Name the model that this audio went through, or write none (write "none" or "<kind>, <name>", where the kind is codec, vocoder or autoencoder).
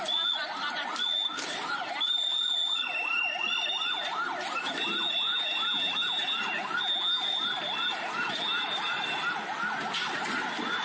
none